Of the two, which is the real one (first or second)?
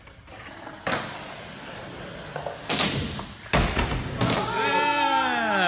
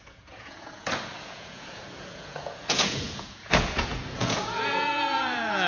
first